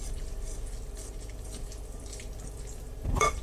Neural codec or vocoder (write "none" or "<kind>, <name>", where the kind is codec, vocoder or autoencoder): vocoder, BigVGAN v2